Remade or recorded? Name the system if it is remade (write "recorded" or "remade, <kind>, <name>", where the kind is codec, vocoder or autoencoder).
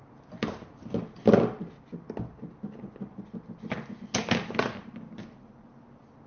recorded